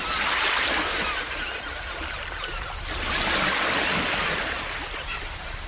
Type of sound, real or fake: fake